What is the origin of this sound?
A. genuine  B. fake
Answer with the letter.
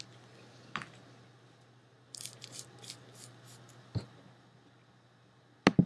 A